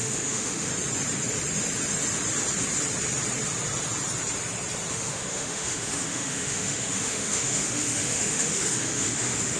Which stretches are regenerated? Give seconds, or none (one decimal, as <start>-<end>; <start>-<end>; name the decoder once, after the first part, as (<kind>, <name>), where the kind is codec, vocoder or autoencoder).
0.0-0.7 (autoencoder, DAC-VAE); 4.9-9.6